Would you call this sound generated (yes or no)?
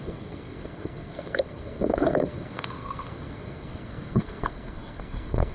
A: yes